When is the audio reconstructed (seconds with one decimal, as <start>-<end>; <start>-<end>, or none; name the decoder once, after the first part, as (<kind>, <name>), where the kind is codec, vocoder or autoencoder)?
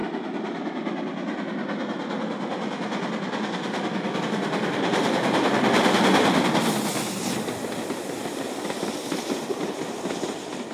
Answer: none